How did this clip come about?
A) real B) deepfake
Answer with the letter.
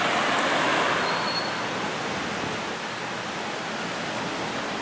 A